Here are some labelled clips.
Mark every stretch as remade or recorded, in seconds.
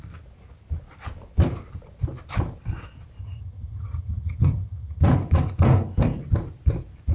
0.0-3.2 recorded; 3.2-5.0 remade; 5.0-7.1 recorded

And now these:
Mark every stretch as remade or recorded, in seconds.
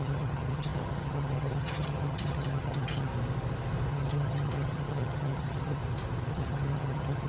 0.0-3.1 remade; 3.1-3.9 recorded; 3.9-5.8 remade; 5.8-6.3 recorded; 6.3-7.3 remade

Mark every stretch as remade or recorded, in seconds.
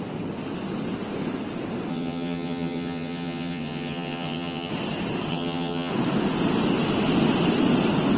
0.0-1.9 recorded; 1.9-4.7 remade; 4.7-5.3 recorded; 5.3-5.9 remade; 5.9-8.2 recorded